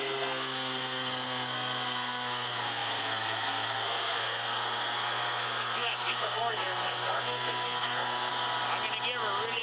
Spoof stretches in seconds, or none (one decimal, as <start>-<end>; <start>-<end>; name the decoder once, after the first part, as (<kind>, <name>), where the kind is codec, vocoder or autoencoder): 0.0-8.3 (codec, SNAC)